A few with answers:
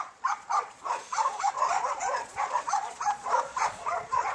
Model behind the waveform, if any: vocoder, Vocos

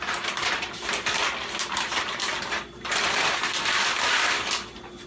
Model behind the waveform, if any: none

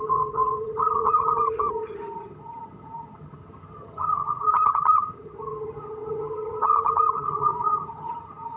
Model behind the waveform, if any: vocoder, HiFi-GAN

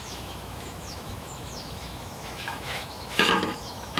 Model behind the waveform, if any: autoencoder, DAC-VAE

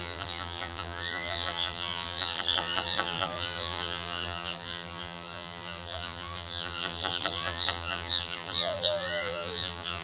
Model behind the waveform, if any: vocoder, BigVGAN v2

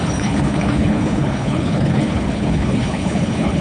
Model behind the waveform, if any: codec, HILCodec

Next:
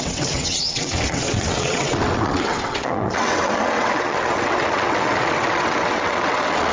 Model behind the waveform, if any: vocoder, WaveNeXt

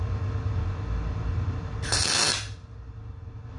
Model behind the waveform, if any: none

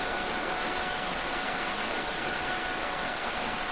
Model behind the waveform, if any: codec, SNAC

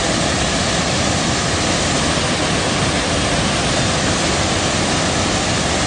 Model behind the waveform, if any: none